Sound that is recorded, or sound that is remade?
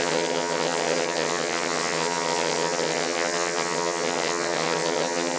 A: remade